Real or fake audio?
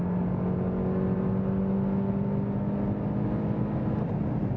real